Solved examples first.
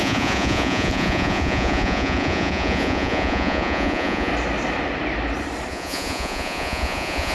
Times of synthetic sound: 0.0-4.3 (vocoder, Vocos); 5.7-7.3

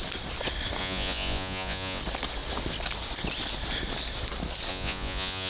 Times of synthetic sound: 0.8-2.0 (vocoder, Vocos); 4.7-5.5